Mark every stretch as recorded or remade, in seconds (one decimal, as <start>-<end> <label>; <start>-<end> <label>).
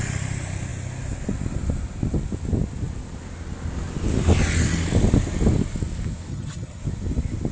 0.0-6.3 recorded; 6.3-6.8 remade; 6.8-7.5 recorded